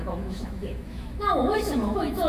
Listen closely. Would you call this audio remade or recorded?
remade